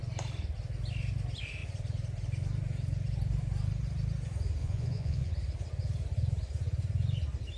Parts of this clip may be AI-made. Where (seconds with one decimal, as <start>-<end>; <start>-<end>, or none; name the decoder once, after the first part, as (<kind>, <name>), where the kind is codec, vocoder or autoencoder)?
4.6-5.3 (vocoder, Vocos)